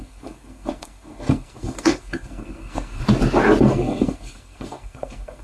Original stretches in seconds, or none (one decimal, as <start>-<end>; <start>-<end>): 3.0-3.6